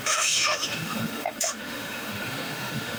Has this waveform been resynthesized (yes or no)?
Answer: yes